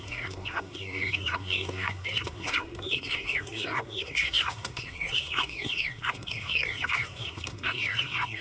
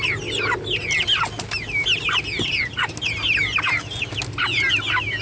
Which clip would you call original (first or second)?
second